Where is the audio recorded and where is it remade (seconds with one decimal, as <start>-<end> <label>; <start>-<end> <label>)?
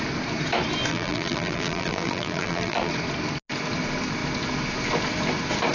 0.0-0.9 recorded; 0.9-2.9 remade; 2.9-5.7 recorded